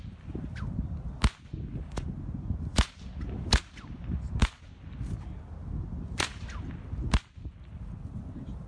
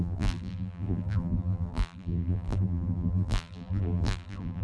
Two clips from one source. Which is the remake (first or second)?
second